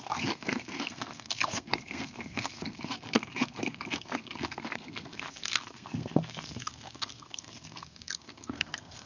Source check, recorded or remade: remade